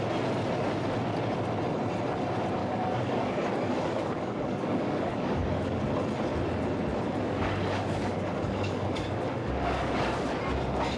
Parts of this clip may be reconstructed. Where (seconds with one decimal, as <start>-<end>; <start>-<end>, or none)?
2.6-5.8; 6.9-10.3